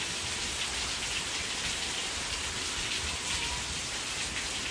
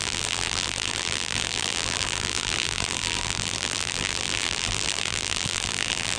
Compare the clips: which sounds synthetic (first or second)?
second